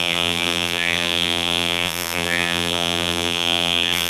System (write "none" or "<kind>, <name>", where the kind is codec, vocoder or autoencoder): vocoder, BigVGAN v2